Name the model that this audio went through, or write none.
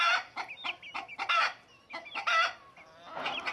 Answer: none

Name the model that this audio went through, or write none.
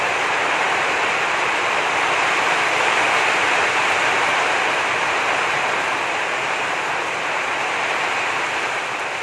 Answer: vocoder, BigVGAN v2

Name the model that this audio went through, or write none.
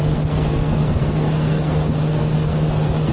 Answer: codec, SNAC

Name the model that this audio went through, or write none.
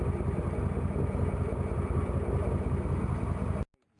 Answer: none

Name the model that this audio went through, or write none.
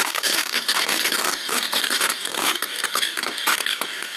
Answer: codec, DAC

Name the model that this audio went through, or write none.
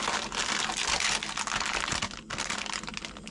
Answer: none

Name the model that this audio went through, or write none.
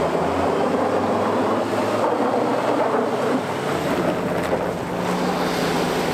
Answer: none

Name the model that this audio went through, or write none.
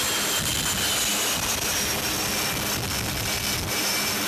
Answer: none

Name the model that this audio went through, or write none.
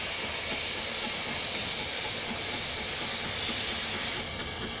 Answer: none